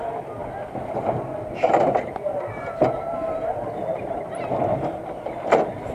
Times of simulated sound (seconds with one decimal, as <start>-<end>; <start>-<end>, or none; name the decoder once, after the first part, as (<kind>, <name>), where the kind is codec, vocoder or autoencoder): none